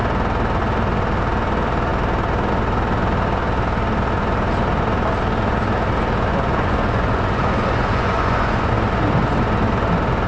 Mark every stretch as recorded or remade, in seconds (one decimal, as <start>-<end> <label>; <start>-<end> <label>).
0.0-6.3 recorded; 6.3-8.7 remade; 8.7-10.3 recorded